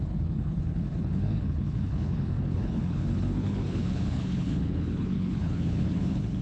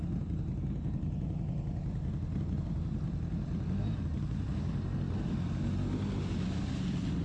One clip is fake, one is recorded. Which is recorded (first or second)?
second